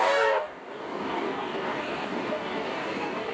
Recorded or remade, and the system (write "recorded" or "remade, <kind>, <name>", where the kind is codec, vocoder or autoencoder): remade, codec, DAC